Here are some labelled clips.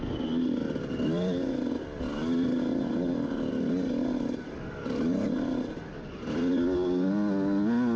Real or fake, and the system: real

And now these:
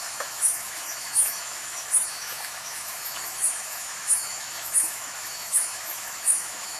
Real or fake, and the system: fake, autoencoder, DAC-VAE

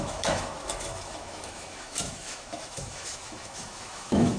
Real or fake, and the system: fake, autoencoder, DAC-VAE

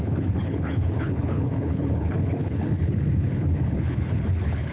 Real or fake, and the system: fake, codec, HILCodec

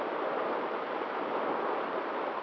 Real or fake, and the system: real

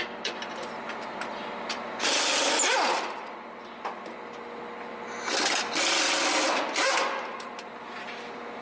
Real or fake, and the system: real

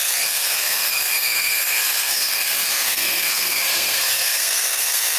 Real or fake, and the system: fake, codec, SNAC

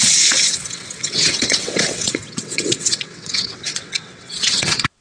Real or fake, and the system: fake, vocoder, WaveNeXt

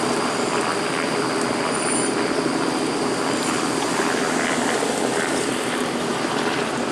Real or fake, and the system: fake, vocoder, BigVGAN v2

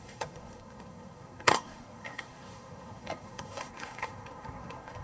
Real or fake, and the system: fake, codec, SNAC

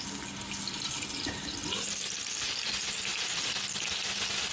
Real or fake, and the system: real